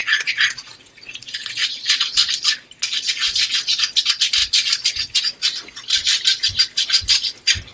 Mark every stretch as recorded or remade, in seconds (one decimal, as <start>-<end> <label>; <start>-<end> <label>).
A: 0.0-2.3 remade; 2.3-7.7 recorded